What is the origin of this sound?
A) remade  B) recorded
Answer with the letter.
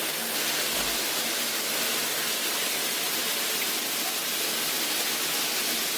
B